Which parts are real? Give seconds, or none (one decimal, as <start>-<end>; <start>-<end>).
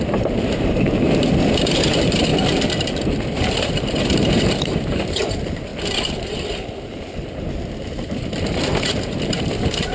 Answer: 2.3-3.4; 5.7-8.8